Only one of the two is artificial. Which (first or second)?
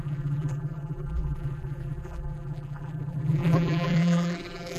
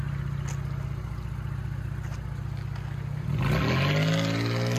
first